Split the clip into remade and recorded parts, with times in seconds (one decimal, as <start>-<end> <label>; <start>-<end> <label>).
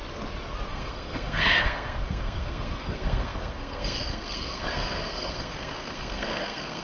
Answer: 0.0-0.7 recorded; 0.7-6.8 remade